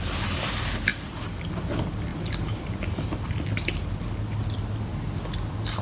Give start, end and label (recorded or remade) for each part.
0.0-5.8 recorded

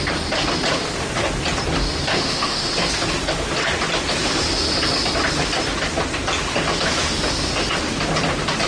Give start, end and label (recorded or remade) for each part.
0.0-2.1 recorded; 2.1-2.7 remade; 2.7-8.7 recorded

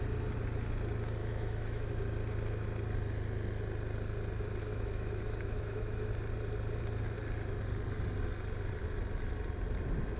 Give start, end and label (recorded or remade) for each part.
0.0-1.2 recorded; 1.2-1.9 remade; 1.9-4.7 recorded; 4.7-6.1 remade; 6.1-10.2 recorded

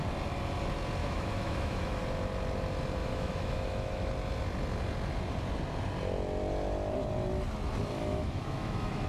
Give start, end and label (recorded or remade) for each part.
0.0-1.0 recorded; 1.0-2.0 remade; 2.0-3.0 recorded; 3.0-4.1 remade; 4.1-8.1 recorded; 8.1-9.1 remade

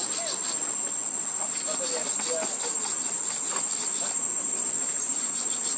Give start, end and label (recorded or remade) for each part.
0.0-5.8 recorded

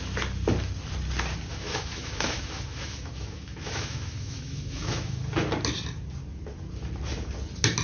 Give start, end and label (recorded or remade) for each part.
0.0-1.5 recorded; 1.5-5.2 remade; 5.2-7.8 recorded

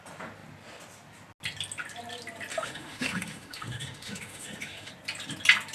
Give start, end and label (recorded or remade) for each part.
0.0-2.5 recorded; 2.5-4.9 remade; 4.9-5.7 recorded

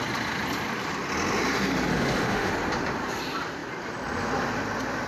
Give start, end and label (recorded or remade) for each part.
0.0-1.9 recorded; 1.9-2.5 remade; 2.5-5.1 recorded